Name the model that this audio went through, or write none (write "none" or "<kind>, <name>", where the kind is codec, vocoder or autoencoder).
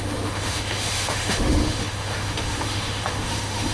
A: autoencoder, DAC-VAE